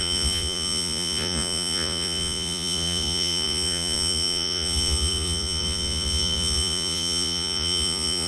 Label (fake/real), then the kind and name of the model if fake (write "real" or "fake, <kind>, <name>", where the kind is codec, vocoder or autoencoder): fake, vocoder, Vocos